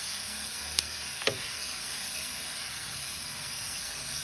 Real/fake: fake